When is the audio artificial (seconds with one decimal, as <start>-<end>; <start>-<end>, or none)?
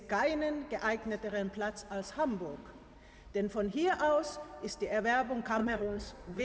5.6-6.4